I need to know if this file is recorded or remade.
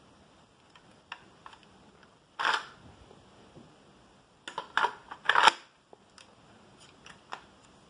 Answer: recorded